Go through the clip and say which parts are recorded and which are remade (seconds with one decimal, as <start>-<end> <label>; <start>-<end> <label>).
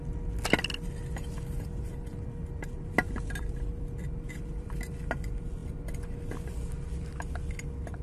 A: 0.0-2.1 recorded; 2.1-4.7 remade; 4.7-8.0 recorded